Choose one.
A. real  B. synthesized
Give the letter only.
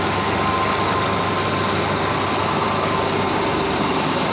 A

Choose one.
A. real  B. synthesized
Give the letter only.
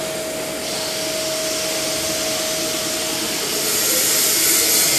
A